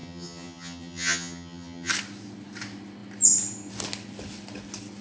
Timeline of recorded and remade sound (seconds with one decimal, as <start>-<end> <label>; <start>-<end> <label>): 0.0-1.9 remade; 1.9-5.0 recorded